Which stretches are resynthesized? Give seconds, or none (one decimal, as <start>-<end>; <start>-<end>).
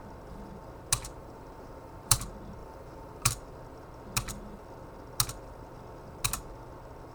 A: 1.2-2.2; 2.6-3.3